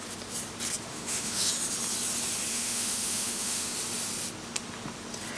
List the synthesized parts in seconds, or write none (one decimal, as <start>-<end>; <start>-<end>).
0.9-1.5; 2.5-3.7